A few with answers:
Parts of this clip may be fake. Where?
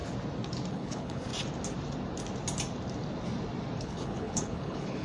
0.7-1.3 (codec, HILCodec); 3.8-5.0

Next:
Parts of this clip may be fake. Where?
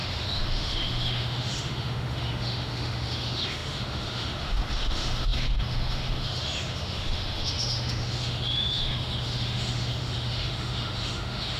0.0-11.6 (autoencoder, DAC-VAE)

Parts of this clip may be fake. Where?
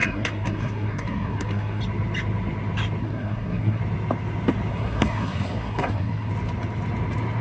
0.0-1.8 (codec, SNAC); 3.0-3.8; 4.7-6.3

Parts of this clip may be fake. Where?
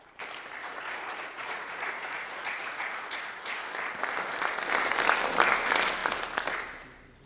0.6-3.5 (vocoder, Vocos)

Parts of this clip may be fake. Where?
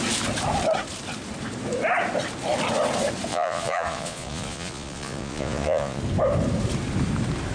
3.3-6.0 (vocoder, Vocos)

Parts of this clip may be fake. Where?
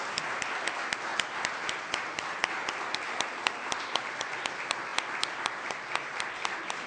none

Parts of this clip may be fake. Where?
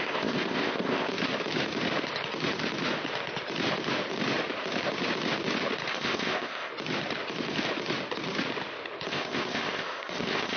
0.0-1.1 (codec, ZipCodec); 5.9-6.7; 9.1-10.6